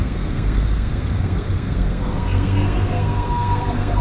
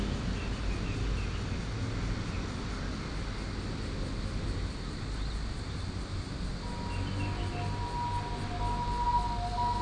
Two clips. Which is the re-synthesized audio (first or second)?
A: first